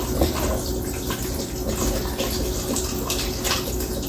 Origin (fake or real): real